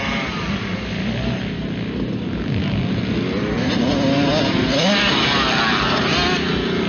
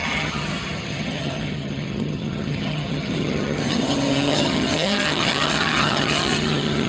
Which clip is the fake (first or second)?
second